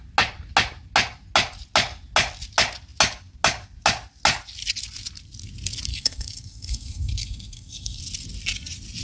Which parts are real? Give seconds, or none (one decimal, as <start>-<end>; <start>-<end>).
0.0-5.9; 8.0-9.0